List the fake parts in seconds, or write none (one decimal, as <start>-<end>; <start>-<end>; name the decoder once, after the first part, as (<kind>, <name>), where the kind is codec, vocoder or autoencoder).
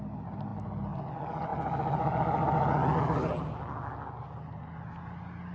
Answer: none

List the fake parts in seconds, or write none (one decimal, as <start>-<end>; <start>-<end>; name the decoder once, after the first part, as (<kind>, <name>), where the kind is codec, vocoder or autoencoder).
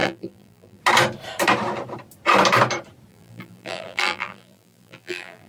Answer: 0.0-0.8 (vocoder, BigVGAN v2); 3.1-5.5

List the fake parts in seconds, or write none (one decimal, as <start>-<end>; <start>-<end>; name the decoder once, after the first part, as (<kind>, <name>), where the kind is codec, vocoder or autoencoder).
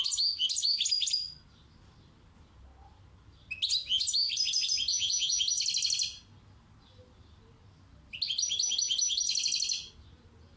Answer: 4.9-5.4 (vocoder, Vocos)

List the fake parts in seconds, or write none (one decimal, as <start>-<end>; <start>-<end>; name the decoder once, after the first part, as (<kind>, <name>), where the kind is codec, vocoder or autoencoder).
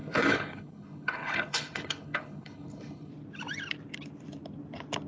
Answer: 0.0-3.1 (codec, HILCodec)